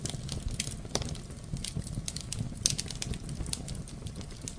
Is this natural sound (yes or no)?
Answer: yes